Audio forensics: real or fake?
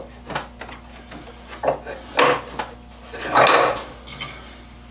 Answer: real